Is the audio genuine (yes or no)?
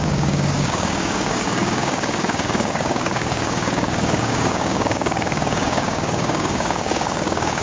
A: no